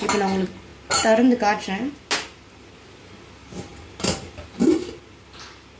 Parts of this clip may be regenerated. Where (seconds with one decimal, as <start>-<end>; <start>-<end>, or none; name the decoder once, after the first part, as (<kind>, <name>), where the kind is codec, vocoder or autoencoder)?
none